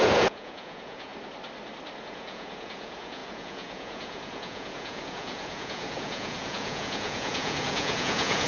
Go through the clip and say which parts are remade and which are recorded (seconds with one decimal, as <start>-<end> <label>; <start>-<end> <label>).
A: 0.0-1.1 remade; 1.1-2.0 recorded; 2.0-8.5 remade